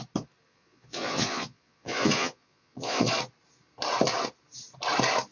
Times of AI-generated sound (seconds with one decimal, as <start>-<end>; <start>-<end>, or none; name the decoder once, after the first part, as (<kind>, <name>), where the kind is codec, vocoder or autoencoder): 0.5-3.1 (vocoder, Vocos)